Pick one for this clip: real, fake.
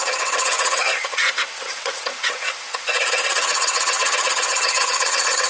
fake